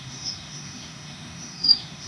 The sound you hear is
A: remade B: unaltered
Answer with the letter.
A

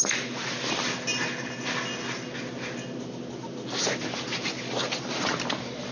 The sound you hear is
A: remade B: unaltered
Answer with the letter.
B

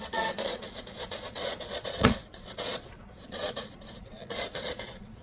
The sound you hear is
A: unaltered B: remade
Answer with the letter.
B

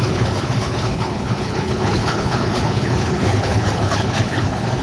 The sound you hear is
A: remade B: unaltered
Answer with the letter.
A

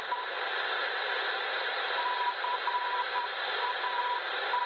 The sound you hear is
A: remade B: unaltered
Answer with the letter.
B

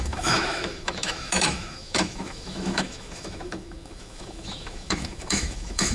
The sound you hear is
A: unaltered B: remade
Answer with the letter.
B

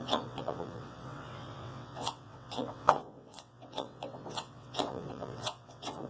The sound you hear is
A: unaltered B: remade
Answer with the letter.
B